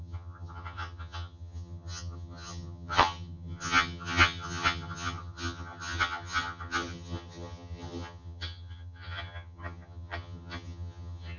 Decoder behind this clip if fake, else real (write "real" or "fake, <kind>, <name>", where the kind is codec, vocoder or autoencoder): fake, vocoder, HiFi-GAN